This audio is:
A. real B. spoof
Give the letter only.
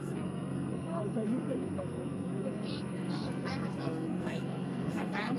B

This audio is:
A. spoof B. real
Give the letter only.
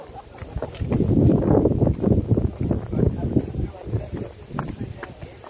A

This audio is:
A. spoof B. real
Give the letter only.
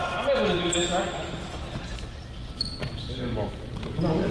B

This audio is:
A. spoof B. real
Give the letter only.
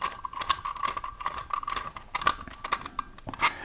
B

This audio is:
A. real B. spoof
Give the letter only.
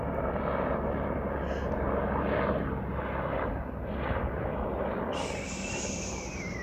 A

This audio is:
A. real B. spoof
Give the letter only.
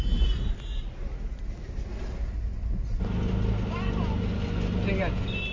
A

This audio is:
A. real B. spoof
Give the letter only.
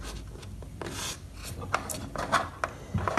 A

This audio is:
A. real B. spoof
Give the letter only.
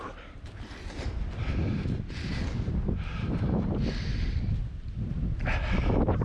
A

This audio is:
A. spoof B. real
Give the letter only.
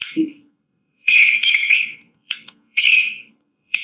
A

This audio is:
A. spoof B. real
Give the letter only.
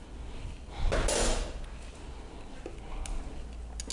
B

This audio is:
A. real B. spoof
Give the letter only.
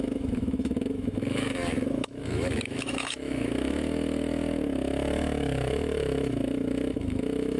B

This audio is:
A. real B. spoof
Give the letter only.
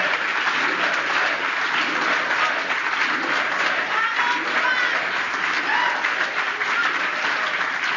A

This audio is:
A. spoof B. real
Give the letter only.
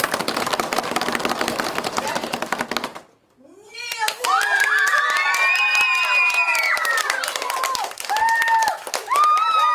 B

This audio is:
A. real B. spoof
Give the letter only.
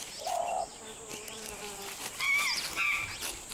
A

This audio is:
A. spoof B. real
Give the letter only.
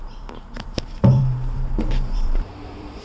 A